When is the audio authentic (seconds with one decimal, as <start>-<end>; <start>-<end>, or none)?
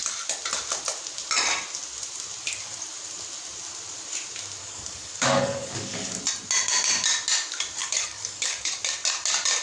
0.0-4.6; 6.2-7.8; 8.7-9.6